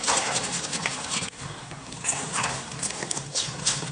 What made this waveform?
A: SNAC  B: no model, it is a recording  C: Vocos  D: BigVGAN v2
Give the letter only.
A